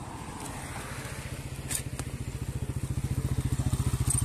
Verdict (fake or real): real